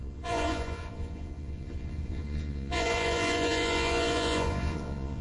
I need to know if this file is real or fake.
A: fake